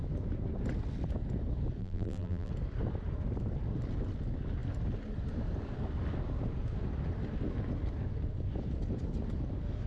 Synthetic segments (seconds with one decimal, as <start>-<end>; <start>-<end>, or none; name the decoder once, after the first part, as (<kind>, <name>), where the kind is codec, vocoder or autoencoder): 1.8-2.5 (vocoder, BigVGAN v2)